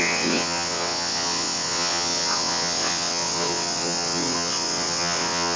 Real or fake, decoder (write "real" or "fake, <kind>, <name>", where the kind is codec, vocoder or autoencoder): fake, vocoder, WaveNeXt